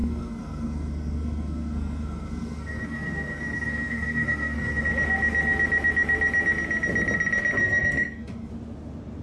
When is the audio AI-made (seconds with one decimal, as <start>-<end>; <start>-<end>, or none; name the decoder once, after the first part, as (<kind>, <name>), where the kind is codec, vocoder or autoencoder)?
0.0-4.8 (codec, SNAC); 7.6-8.5